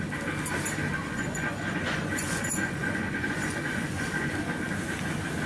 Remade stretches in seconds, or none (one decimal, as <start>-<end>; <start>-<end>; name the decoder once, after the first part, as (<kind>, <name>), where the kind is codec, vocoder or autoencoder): 1.0-4.3 (vocoder, Vocos)